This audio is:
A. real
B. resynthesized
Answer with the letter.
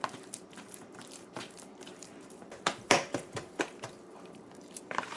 B